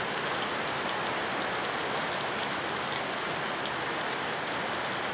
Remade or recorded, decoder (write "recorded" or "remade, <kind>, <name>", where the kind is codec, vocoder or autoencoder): recorded